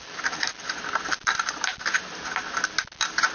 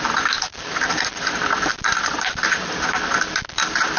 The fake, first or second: second